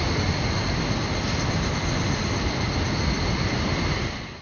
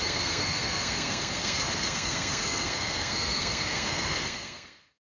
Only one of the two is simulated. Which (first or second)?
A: second